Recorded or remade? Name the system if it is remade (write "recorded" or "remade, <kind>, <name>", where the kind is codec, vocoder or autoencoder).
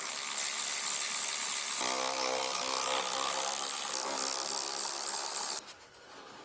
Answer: recorded